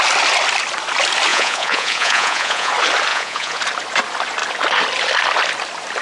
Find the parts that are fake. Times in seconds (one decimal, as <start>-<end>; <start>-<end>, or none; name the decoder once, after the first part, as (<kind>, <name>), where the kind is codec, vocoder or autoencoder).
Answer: 1.3-2.7 (vocoder, Vocos); 3.1-3.6